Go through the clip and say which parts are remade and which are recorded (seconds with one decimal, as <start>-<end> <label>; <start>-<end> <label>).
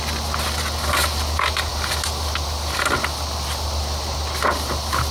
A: 0.0-5.1 recorded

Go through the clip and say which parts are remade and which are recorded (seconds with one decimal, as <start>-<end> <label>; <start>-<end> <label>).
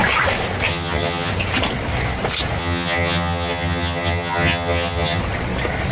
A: 0.0-0.7 recorded; 0.7-1.3 remade; 1.3-2.6 recorded; 2.6-5.2 remade; 5.2-5.9 recorded